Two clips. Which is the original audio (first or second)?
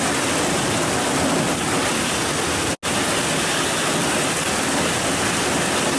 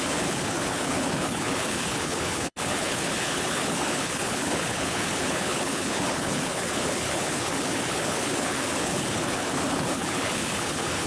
first